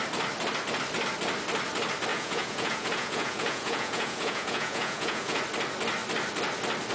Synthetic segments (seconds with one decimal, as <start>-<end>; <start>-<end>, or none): 2.1-5.4